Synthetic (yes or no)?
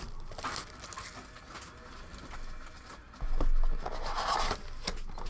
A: no